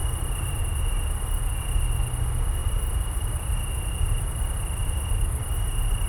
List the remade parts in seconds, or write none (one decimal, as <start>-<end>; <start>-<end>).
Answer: 0.0-0.6; 2.6-4.3

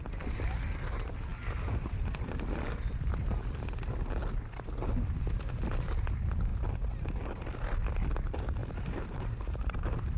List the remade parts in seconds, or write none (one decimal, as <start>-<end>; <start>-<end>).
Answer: 8.6-10.2

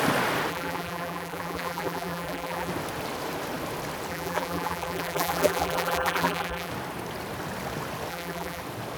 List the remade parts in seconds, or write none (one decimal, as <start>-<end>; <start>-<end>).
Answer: 0.5-2.7; 4.1-6.7; 8.1-8.6

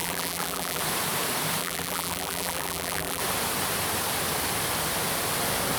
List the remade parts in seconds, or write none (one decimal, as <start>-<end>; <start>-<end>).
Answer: 0.0-0.8; 1.6-3.2

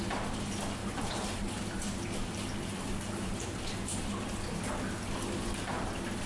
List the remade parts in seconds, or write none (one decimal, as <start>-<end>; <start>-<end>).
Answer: 0.8-4.6